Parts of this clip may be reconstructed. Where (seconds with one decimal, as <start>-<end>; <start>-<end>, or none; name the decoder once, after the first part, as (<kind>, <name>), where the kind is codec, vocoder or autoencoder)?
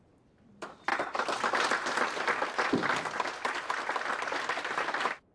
0.0-0.9 (vocoder, BigVGAN v2); 2.7-5.3